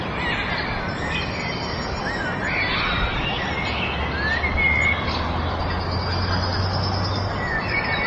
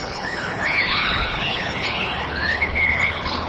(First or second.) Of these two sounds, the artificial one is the second